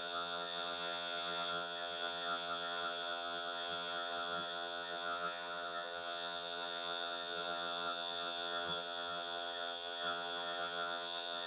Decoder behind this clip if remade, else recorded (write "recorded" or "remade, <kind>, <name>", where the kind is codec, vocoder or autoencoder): remade, vocoder, HiFi-GAN